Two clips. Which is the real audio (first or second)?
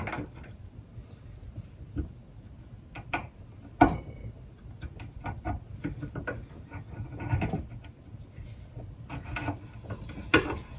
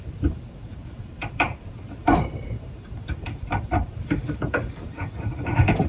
first